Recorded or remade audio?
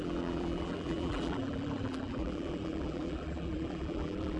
remade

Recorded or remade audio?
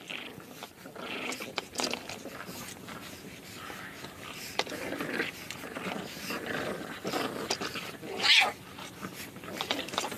remade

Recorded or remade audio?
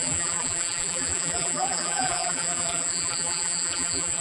remade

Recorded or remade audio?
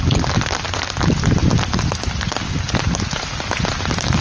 remade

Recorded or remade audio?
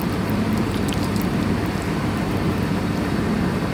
remade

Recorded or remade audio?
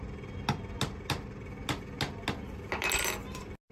recorded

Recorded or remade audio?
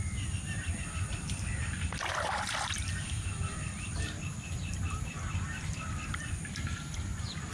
remade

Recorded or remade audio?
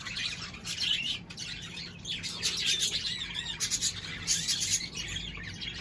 remade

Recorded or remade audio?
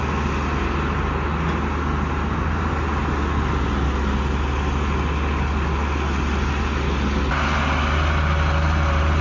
recorded